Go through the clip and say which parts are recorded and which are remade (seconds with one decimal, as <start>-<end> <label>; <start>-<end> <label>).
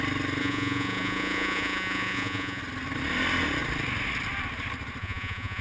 0.0-0.4 recorded; 0.4-2.6 remade; 2.6-5.0 recorded; 5.0-5.6 remade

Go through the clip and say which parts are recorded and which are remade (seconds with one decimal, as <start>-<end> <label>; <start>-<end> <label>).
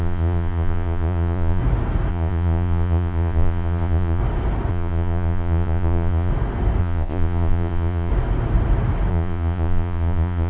0.0-1.6 remade; 1.6-2.1 recorded; 2.1-4.2 remade; 4.2-4.7 recorded; 4.7-6.3 remade; 6.3-6.8 recorded; 6.8-8.1 remade; 8.1-9.1 recorded; 9.1-10.5 remade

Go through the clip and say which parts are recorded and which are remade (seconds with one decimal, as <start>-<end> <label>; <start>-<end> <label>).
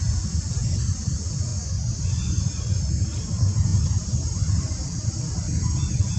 0.0-1.5 recorded; 1.5-2.8 remade; 2.8-6.2 recorded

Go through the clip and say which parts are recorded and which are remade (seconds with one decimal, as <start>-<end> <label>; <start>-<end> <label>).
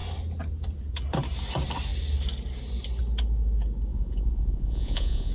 0.0-3.9 recorded; 3.9-5.3 remade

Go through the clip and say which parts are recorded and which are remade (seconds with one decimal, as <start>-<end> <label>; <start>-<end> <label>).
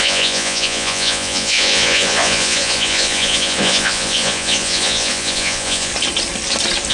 0.0-5.9 remade; 5.9-6.9 recorded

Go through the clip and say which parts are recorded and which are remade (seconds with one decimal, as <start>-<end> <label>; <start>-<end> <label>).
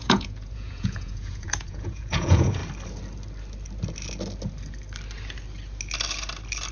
0.0-2.6 remade; 2.6-6.7 recorded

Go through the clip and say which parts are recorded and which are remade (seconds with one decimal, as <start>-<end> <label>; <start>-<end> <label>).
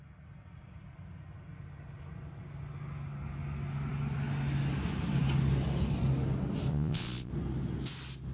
0.0-6.7 recorded; 6.7-7.3 remade; 7.3-8.3 recorded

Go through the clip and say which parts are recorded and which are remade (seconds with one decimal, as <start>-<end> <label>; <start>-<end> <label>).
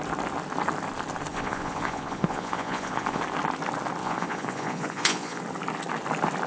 0.0-1.3 recorded; 1.3-3.2 remade; 3.2-4.0 recorded; 4.0-5.4 remade; 5.4-6.5 recorded